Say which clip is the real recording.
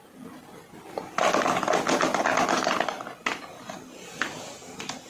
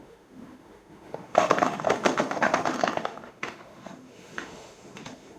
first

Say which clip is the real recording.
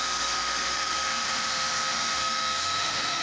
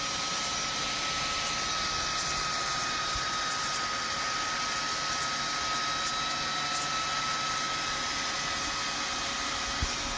second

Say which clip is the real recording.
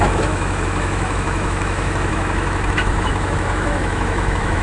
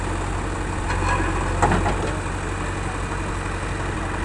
second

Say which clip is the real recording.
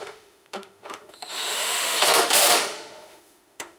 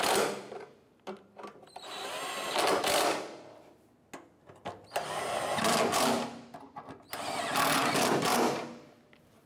second